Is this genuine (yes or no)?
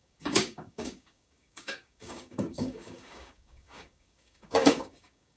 no